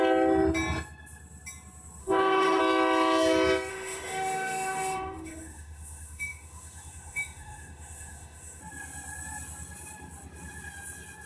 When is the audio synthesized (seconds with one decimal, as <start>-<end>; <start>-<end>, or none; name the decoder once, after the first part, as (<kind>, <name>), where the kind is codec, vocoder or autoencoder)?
2.0-2.6 (autoencoder, DAC-VAE); 3.7-8.6